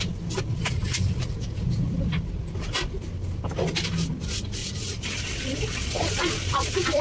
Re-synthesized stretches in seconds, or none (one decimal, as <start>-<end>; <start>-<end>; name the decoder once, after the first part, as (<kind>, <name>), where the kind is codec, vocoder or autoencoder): 0.0-7.0 (vocoder, BigVGAN v2)